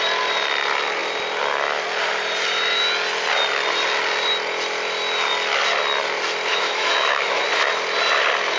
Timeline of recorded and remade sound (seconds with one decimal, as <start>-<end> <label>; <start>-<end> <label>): 0.0-6.5 recorded; 6.5-7.4 remade; 7.4-8.6 recorded